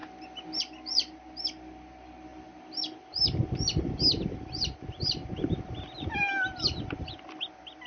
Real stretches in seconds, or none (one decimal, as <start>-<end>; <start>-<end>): 0.0-7.9